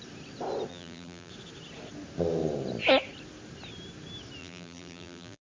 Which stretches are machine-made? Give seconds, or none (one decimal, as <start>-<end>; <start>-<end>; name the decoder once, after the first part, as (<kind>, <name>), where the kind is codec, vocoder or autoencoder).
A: 0.7-1.3 (vocoder, BigVGAN v2); 4.4-5.4